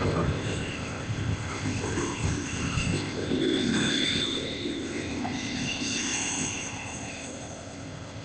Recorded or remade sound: remade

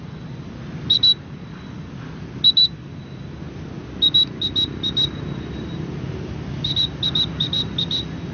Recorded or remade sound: recorded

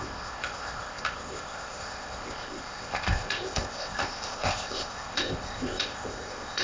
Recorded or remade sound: remade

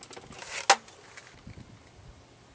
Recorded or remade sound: recorded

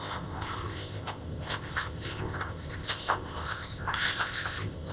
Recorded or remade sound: remade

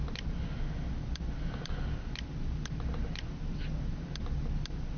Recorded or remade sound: recorded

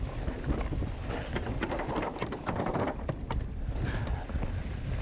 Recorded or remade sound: recorded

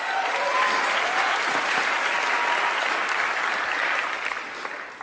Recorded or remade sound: recorded